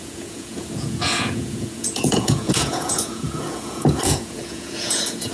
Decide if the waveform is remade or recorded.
remade